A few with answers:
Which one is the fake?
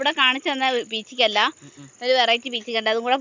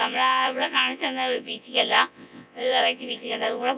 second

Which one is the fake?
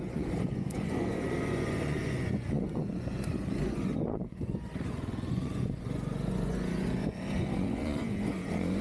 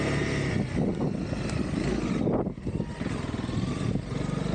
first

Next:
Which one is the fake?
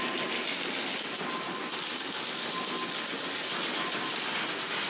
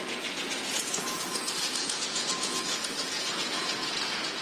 second